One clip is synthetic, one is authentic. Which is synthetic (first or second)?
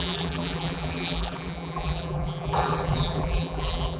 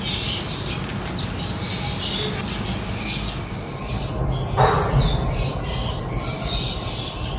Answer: first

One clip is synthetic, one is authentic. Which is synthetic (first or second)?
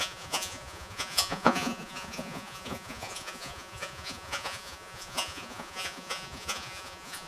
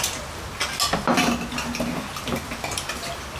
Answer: first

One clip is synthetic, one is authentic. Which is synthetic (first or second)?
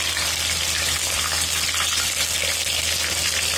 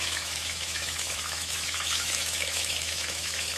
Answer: second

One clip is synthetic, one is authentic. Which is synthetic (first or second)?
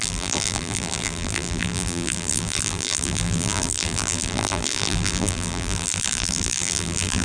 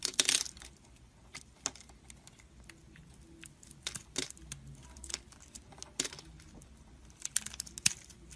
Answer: first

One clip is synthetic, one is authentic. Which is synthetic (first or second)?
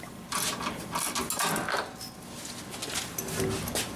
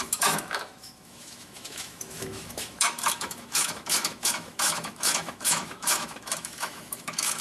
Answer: second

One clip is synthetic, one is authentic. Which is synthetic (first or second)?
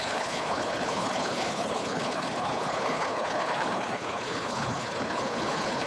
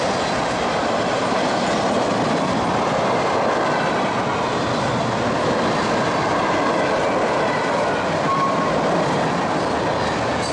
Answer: first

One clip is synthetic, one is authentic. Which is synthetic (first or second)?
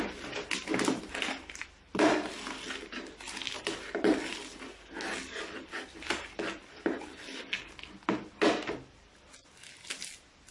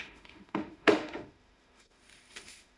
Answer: second